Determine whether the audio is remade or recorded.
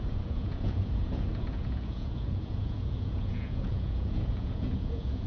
remade